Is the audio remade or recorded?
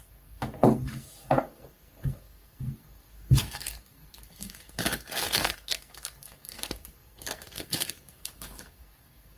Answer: remade